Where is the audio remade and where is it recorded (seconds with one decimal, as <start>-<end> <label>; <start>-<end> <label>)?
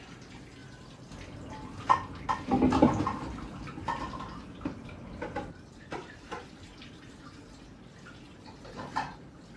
0.0-9.6 recorded